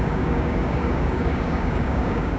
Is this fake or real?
fake